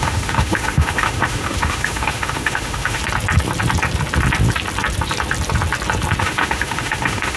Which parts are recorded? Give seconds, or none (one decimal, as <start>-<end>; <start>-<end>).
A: 3.0-6.2